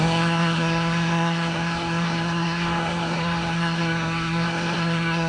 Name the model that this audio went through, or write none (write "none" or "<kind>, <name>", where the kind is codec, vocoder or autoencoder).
codec, SNAC